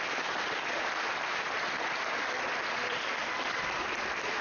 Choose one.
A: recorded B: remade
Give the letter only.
B